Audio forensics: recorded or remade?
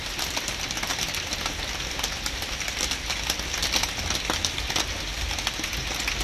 recorded